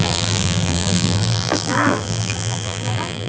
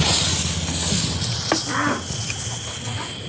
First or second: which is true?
second